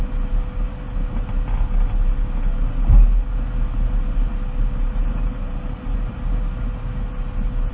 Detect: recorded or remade recorded